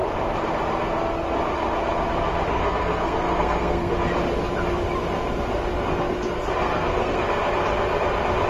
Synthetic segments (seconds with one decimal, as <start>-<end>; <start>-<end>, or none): 2.5-3.9; 6.6-7.2